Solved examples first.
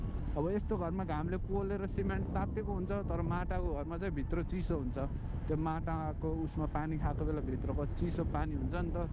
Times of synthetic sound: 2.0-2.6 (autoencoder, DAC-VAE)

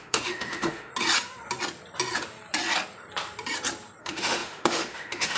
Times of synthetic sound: 0.0-0.9 (autoencoder, DAC-VAE); 4.0-5.4

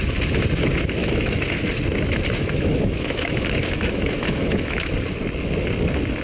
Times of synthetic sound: 1.0-1.6 (autoencoder, DAC-VAE); 2.4-4.9

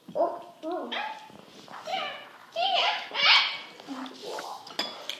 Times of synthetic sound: 1.9-3.1 (autoencoder, DAC-VAE); 4.2-4.7

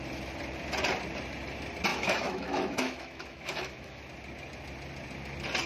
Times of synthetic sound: 1.9-4.0 (autoencoder, DAC-VAE)